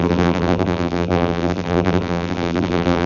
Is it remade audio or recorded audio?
remade